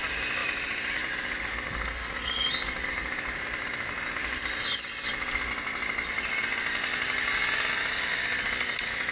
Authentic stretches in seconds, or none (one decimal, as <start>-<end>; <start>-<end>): 0.0-9.1